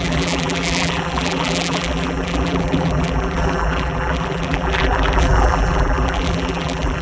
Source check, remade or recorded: remade